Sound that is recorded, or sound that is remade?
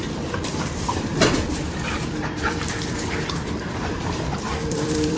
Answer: remade